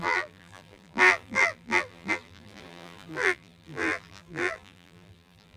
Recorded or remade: remade